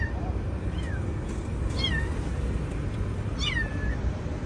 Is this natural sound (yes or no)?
yes